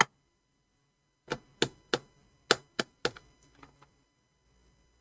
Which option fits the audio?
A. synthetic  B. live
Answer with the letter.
B